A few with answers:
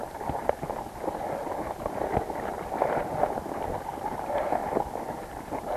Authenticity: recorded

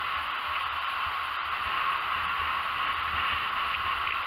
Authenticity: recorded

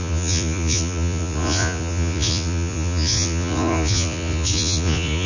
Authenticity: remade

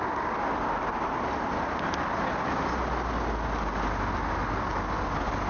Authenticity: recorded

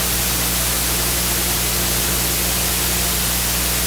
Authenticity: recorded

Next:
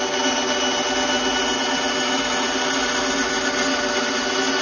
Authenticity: recorded